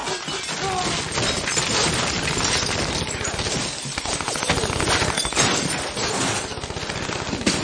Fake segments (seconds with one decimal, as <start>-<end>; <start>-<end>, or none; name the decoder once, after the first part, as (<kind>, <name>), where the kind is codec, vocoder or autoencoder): none